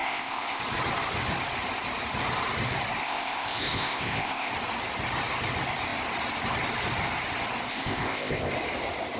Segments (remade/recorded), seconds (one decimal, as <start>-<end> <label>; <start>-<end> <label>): 0.0-0.6 remade; 0.6-3.0 recorded; 3.0-4.5 remade; 4.5-7.7 recorded; 7.7-8.5 remade; 8.5-9.2 recorded